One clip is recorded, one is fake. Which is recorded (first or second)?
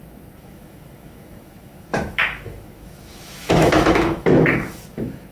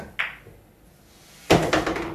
second